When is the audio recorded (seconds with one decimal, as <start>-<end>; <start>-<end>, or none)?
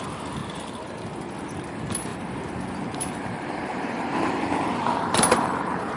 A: 0.0-2.1